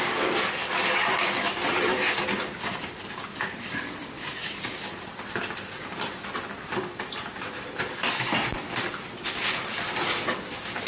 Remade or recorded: recorded